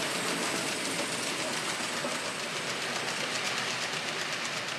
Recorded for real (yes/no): yes